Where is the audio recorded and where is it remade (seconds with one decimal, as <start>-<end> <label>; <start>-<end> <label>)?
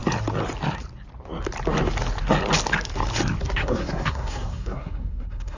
0.0-3.4 recorded; 3.4-5.6 remade